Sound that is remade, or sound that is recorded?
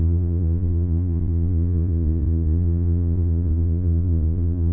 remade